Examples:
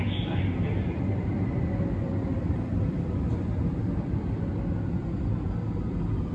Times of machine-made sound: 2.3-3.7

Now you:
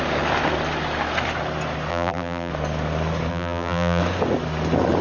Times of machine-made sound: 1.9-2.5; 3.3-4.0

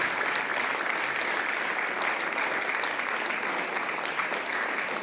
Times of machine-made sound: none

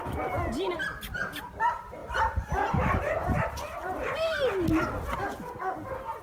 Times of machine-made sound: 2.0-4.5

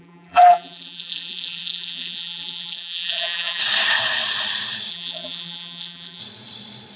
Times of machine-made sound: 0.0-3.6; 4.9-6.2

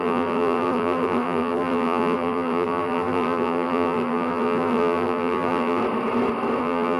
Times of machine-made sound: 0.0-5.8; 6.6-7.0

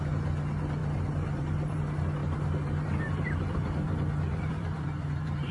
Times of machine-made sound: 0.8-1.8; 2.2-5.5